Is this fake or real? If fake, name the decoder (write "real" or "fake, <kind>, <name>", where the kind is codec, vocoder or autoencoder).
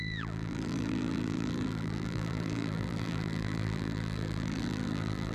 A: fake, vocoder, BigVGAN v2